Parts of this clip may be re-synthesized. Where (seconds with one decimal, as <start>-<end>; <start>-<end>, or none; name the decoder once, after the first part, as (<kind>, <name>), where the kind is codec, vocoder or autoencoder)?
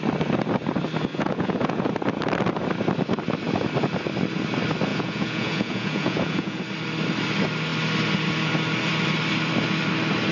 1.1-1.9 (vocoder, Vocos); 4.9-6.6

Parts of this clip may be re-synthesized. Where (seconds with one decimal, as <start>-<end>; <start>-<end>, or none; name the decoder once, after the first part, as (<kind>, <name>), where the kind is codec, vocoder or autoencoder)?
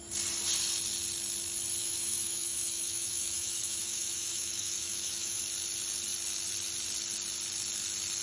1.8-5.4 (autoencoder, DAC-VAE)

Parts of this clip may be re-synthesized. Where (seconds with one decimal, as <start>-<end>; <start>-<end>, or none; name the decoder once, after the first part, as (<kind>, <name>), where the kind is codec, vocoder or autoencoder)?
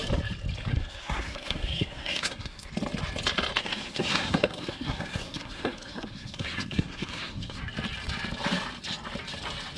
0.7-2.7 (codec, SNAC); 3.6-7.6